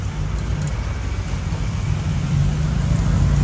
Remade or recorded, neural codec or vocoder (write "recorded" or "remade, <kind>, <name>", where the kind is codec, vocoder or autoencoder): recorded